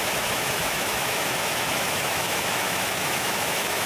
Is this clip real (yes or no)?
no